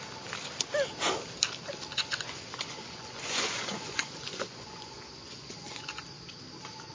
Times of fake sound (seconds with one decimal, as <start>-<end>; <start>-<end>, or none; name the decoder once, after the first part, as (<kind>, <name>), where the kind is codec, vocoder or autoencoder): 1.9-6.0 (vocoder, Vocos)